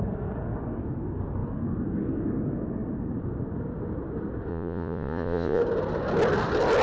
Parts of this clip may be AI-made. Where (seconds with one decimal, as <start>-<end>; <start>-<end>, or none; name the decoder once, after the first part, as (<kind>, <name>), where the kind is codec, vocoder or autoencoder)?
4.5-5.6 (vocoder, Vocos)